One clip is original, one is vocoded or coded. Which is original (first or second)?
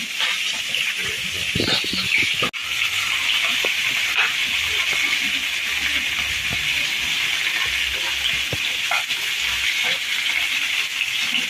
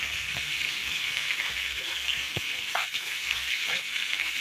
first